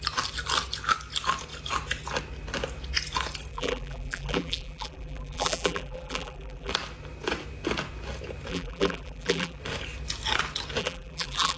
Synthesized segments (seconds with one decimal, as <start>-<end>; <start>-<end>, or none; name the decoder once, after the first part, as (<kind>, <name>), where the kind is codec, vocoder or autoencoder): 3.5-6.7 (vocoder, BigVGAN v2); 8.5-9.6; 10.8-11.6